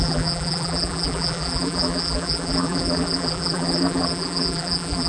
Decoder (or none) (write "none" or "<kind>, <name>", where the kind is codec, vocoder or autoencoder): vocoder, BigVGAN v2